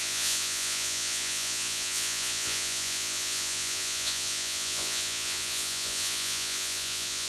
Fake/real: fake